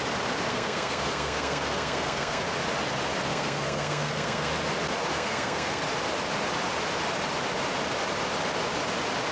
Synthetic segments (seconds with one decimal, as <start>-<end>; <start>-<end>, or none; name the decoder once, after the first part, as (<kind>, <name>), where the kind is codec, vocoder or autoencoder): 0.5-2.4 (codec, SNAC); 3.3-4.5; 5.1-5.8